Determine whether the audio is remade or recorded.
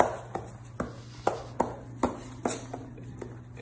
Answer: recorded